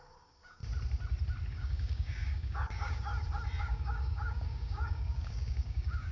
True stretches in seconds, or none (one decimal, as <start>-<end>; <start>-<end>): 0.6-1.5; 3.1-3.6